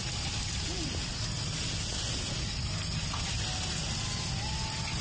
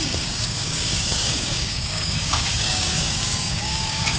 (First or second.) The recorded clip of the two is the first